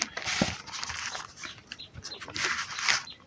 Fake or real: fake